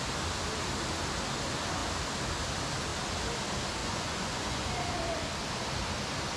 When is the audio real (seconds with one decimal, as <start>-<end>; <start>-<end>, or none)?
0.0-3.8; 4.7-6.4